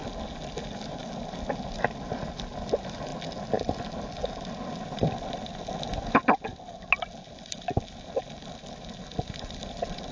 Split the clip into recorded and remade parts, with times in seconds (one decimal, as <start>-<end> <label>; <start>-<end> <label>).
0.0-10.1 recorded